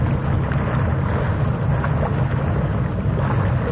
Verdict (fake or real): real